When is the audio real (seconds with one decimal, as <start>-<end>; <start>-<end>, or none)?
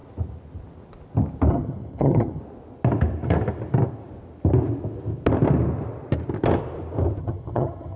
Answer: 0.0-1.5; 2.4-7.2